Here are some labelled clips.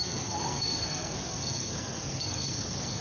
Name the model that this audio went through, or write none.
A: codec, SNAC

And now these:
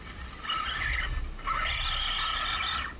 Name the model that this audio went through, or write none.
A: none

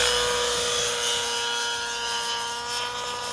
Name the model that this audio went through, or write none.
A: none